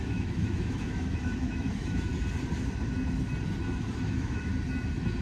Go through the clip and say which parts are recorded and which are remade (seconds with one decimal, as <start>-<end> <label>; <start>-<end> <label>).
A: 0.0-2.1 remade; 2.1-4.0 recorded; 4.0-4.5 remade; 4.5-5.2 recorded